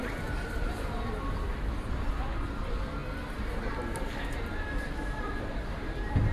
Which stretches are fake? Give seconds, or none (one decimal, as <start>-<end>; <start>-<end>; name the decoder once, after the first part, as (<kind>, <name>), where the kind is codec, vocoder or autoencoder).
0.0-3.0 (vocoder, BigVGAN v2); 5.4-6.3